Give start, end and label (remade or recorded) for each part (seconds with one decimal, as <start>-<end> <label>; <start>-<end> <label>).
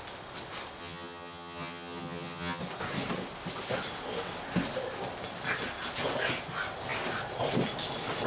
0.0-0.8 recorded; 0.8-2.6 remade; 2.6-8.3 recorded